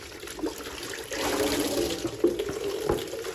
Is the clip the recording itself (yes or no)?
yes